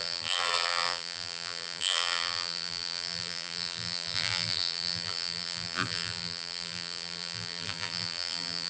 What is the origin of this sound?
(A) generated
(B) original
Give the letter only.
A